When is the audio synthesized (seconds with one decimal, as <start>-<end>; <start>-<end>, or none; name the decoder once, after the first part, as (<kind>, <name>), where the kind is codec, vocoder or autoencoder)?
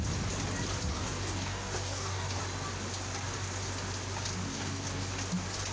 0.9-2.4 (codec, DAC); 4.5-5.1